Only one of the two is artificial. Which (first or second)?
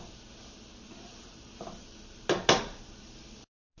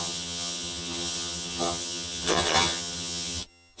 second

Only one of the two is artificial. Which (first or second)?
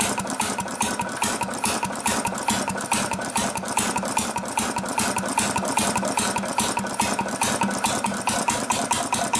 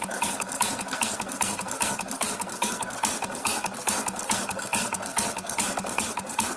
second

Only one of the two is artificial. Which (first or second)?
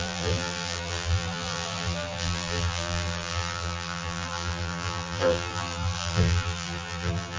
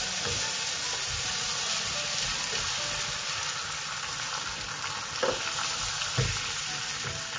first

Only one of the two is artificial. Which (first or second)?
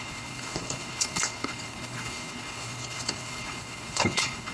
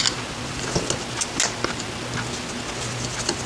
first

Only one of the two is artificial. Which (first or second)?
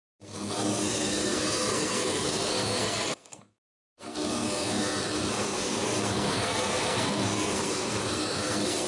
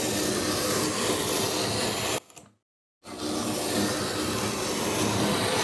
first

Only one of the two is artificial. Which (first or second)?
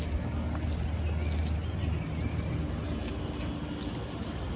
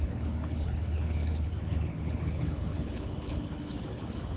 second